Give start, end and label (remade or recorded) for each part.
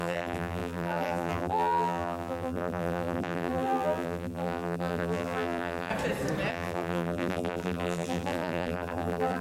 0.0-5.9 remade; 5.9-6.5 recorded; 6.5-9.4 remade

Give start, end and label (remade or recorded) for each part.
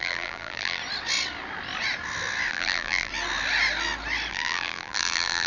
0.0-0.8 remade; 0.8-2.5 recorded; 2.5-3.1 remade; 3.1-4.3 recorded; 4.3-5.5 remade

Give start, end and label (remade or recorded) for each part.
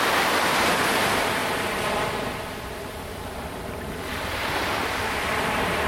0.0-1.4 remade; 1.4-2.7 recorded; 2.7-5.9 remade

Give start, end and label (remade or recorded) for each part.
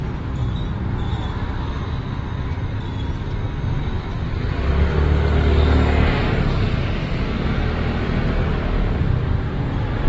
0.0-0.4 recorded; 0.4-1.3 remade; 1.3-10.1 recorded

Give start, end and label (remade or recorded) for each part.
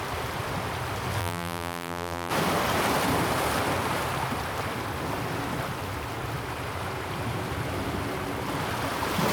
0.0-1.2 recorded; 1.2-2.3 remade; 2.3-9.3 recorded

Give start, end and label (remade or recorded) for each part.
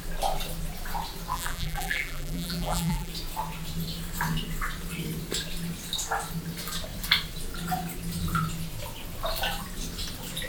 0.0-1.3 recorded; 1.3-3.1 remade; 3.1-10.5 recorded